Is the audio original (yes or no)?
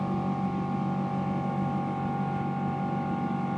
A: yes